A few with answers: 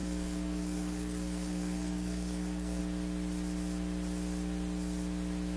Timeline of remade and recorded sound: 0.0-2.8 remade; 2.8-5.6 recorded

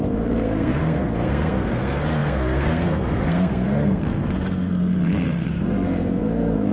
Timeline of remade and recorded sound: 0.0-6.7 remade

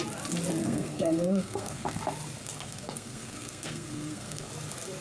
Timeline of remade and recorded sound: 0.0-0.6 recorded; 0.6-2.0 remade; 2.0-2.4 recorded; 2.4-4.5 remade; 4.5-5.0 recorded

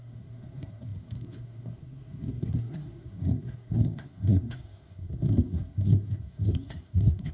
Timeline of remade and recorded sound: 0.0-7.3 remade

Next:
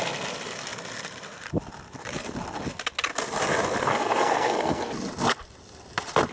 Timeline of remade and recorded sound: 0.0-3.8 recorded; 3.8-4.9 remade; 4.9-6.3 recorded

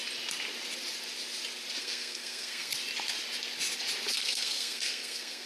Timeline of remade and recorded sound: 0.0-1.8 recorded; 1.8-2.7 remade; 2.7-4.1 recorded; 4.1-5.5 remade

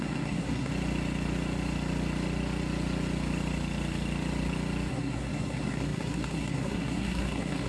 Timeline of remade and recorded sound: 0.0-0.7 remade; 0.7-4.9 recorded; 4.9-7.7 remade

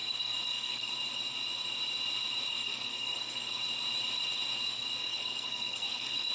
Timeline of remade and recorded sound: 0.0-0.9 remade; 0.9-2.5 recorded; 2.5-3.6 remade; 3.6-5.0 recorded; 5.0-6.3 remade